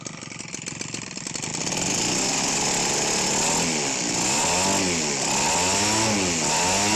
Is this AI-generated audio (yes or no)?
no